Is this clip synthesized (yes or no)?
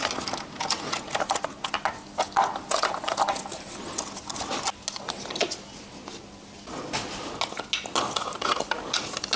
no